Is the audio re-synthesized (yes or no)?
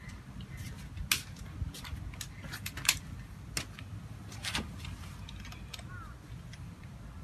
no